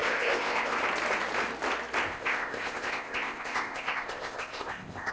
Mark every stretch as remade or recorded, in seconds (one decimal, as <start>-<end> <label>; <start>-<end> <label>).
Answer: 0.0-0.8 remade; 0.8-2.1 recorded; 2.1-5.1 remade